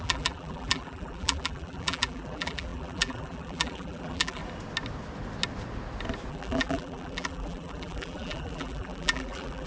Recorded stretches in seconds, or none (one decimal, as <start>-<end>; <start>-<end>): 4.4-6.3